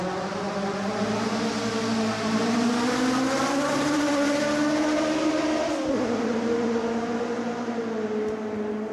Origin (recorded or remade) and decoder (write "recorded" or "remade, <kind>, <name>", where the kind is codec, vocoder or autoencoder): recorded